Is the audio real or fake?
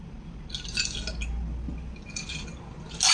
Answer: real